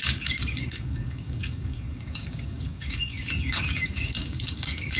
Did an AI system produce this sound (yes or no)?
yes